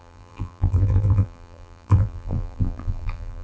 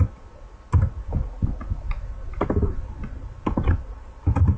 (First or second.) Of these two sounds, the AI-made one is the first